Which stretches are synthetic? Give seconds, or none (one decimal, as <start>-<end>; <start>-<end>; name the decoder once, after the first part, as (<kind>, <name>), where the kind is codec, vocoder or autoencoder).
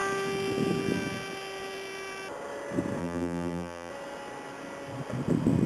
3.0-3.9 (vocoder, BigVGAN v2)